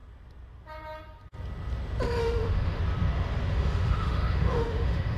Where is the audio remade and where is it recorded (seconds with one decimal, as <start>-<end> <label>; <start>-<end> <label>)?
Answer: 0.0-2.2 recorded; 2.2-2.8 remade; 2.8-3.5 recorded; 3.5-5.2 remade